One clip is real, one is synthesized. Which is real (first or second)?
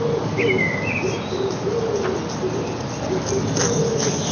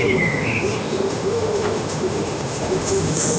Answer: first